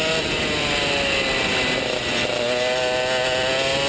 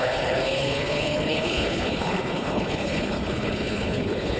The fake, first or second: second